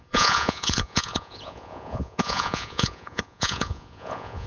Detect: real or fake fake